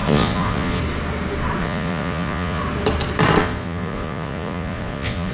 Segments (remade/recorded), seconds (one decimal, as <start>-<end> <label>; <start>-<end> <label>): 0.0-0.8 remade; 0.8-1.6 recorded; 1.6-2.6 remade; 2.6-3.4 recorded; 3.4-5.3 remade